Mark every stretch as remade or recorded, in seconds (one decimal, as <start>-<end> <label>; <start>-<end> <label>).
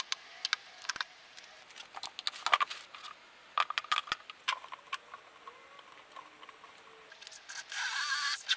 0.0-8.6 recorded